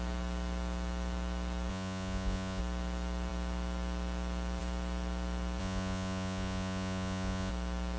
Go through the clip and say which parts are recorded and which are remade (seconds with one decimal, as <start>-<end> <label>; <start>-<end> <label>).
0.0-1.7 recorded; 1.7-2.6 remade; 2.6-5.6 recorded; 5.6-7.5 remade; 7.5-8.0 recorded